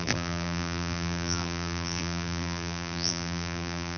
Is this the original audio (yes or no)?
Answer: no